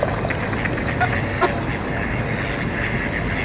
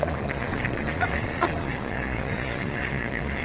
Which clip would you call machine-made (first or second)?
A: second